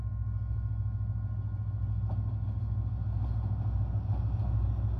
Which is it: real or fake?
real